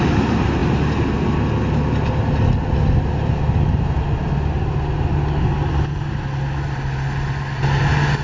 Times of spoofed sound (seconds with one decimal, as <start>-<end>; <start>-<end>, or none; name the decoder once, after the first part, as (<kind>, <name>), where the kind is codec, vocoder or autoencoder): none